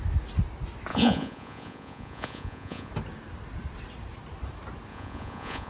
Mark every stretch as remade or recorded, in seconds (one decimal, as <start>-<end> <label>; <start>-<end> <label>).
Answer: 0.0-0.9 recorded; 0.9-2.9 remade; 2.9-4.9 recorded; 4.9-5.7 remade